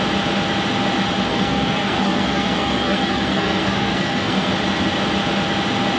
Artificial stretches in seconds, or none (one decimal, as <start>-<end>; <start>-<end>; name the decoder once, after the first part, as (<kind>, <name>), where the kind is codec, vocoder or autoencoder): 1.3-4.5 (codec, SNAC)